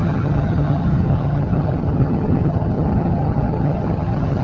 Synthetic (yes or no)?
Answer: yes